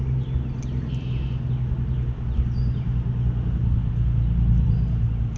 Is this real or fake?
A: real